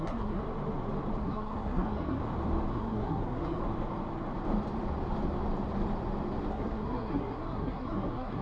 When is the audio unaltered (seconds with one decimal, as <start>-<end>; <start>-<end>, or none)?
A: 0.4-1.2; 2.2-2.7; 3.6-6.5